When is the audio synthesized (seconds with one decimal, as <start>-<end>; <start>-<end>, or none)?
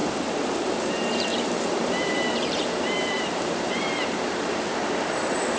1.3-4.5